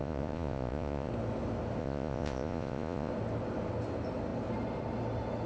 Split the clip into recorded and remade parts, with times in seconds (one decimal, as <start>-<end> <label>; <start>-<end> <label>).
0.0-1.1 remade; 1.1-1.8 recorded; 1.8-3.1 remade; 3.1-5.5 recorded